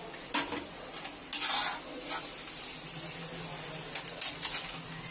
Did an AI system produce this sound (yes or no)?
no